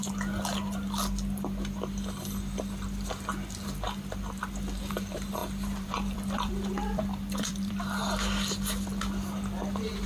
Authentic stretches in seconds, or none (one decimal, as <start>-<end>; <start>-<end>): 0.0-5.4; 7.7-10.1